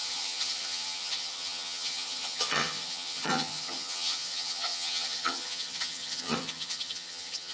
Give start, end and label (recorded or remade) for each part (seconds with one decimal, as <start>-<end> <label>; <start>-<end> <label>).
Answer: 0.0-7.5 remade